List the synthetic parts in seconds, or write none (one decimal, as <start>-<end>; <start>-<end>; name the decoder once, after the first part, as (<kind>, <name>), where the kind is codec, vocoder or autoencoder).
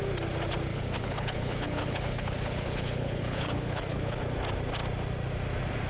0.7-4.2 (codec, HILCodec)